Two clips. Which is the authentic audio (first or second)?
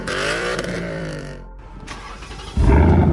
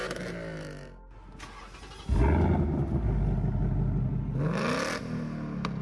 second